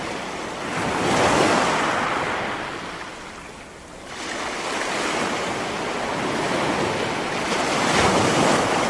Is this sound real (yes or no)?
yes